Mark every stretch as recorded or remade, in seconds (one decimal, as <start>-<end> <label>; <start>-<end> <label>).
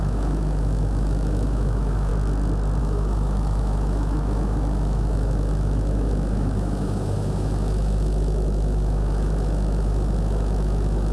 0.0-2.1 remade; 2.1-2.8 recorded; 2.8-11.1 remade